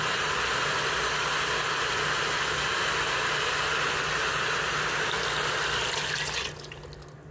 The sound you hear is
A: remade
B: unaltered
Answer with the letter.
B